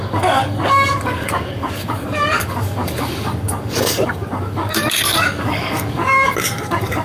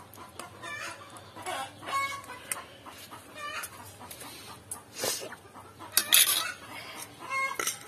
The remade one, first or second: first